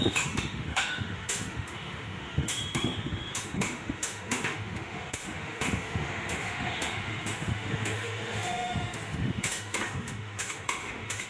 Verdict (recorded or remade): remade